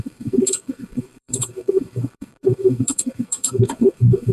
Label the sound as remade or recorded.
remade